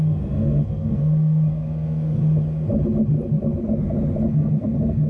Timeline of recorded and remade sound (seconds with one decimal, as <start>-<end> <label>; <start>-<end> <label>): 0.0-2.2 remade; 2.2-4.3 recorded; 4.3-5.1 remade